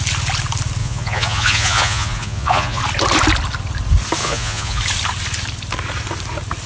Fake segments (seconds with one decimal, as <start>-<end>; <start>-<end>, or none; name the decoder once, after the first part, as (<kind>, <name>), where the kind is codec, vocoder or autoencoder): 0.8-2.8 (vocoder, Vocos); 4.2-4.8